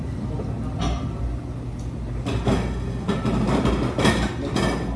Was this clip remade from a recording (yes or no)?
no